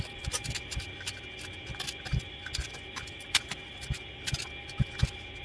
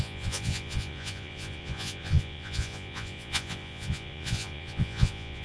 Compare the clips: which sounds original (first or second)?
first